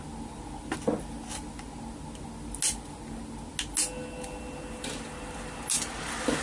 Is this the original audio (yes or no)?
yes